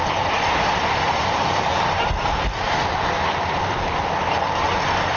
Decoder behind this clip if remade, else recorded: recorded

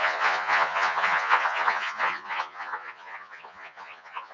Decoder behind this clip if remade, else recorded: remade, vocoder, Vocos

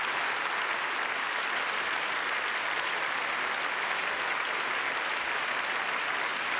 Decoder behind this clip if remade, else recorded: recorded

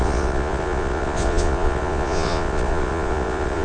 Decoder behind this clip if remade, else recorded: remade, vocoder, Vocos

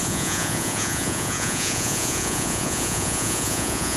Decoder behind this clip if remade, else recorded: remade, vocoder, Vocos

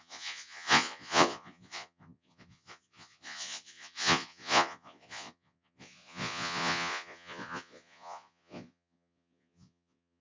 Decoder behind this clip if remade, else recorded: remade, vocoder, Vocos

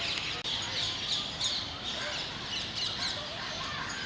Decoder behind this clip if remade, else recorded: recorded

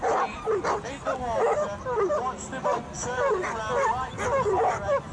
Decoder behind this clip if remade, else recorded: recorded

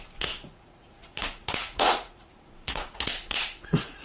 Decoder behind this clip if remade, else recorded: remade, vocoder, Vocos